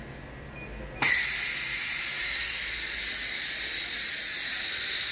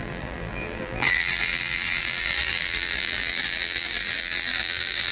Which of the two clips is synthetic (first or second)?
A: second